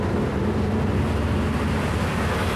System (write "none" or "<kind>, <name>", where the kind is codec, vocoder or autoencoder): none